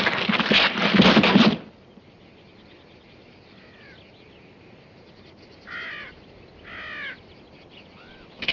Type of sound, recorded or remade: recorded